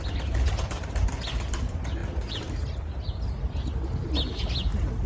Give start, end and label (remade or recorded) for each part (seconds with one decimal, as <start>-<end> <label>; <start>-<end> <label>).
0.0-2.0 recorded; 2.0-3.0 remade; 3.0-5.1 recorded